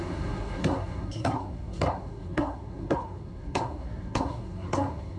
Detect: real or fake fake